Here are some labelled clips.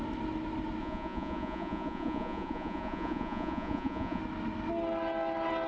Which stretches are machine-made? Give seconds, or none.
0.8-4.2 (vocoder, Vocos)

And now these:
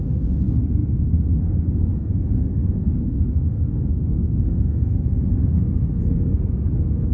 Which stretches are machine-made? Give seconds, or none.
0.0-7.1 (codec, SNAC)

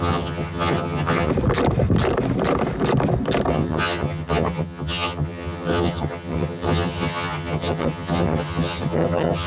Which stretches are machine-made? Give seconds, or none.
0.0-1.3 (vocoder, HiFi-GAN); 3.5-9.5

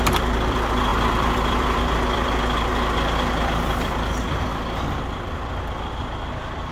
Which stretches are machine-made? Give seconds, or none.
0.0-6.7 (vocoder, BigVGAN v2)

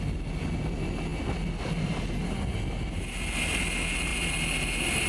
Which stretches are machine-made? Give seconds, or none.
none

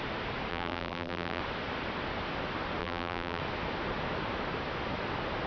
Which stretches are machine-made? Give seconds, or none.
0.5-1.4 (vocoder, BigVGAN v2); 2.8-3.4

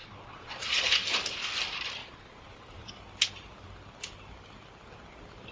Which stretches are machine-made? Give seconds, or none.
0.0-0.8 (vocoder, Vocos); 2.0-2.9

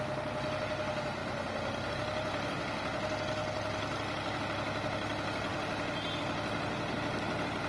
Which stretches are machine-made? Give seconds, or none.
none